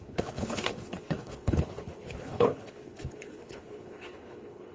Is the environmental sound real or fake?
fake